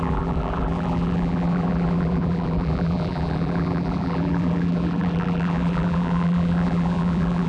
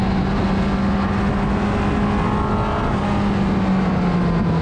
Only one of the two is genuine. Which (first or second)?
second